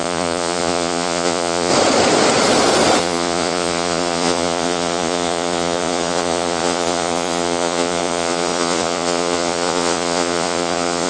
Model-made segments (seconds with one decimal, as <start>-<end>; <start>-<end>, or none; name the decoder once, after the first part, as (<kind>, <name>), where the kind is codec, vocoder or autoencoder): 0.0-1.7 (vocoder, Vocos); 3.0-11.1